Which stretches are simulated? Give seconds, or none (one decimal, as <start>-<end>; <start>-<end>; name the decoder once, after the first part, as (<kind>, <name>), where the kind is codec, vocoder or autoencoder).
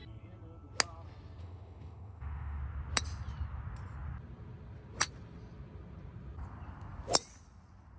1.4-2.6 (autoencoder, DAC-VAE)